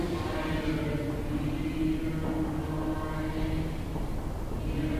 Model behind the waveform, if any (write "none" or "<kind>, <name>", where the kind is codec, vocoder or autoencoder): none